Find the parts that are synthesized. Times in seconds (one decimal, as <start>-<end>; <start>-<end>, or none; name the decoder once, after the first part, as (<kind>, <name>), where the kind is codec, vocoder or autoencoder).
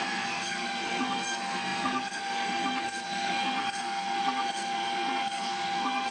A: 0.0-6.1 (codec, SNAC)